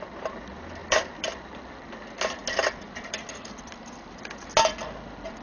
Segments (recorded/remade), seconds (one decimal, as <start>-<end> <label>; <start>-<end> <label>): 0.0-0.8 recorded; 0.8-1.9 remade; 1.9-3.7 recorded; 3.7-4.2 remade; 4.2-5.4 recorded